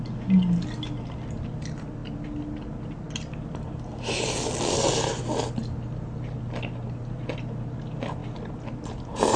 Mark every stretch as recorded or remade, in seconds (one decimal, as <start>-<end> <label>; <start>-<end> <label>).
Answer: 0.0-9.4 recorded

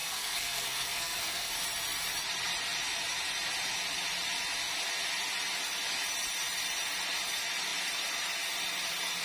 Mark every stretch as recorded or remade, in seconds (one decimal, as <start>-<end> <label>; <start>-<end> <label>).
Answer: 0.0-1.5 remade; 1.5-9.2 recorded

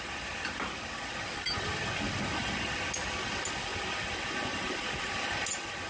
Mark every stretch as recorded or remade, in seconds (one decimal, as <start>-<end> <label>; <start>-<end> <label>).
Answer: 0.0-5.9 recorded

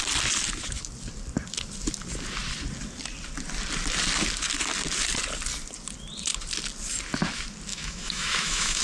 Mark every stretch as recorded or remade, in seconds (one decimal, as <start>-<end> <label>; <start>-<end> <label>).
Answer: 0.0-7.7 recorded; 7.7-8.8 remade

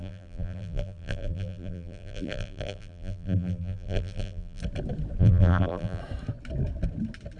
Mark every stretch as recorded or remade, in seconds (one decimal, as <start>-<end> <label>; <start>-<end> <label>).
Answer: 0.0-4.6 remade; 4.6-5.2 recorded; 5.2-6.0 remade; 6.0-7.4 recorded

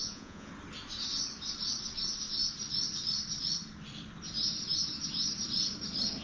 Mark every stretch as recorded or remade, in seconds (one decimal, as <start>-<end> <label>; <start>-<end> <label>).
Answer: 0.0-0.5 remade; 0.5-6.2 recorded